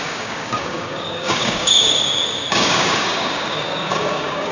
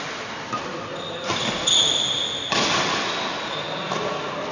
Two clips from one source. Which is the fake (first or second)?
first